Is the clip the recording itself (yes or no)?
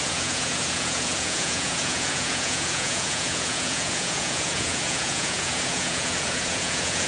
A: no